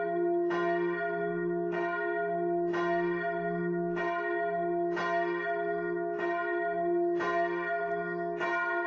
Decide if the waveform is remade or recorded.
recorded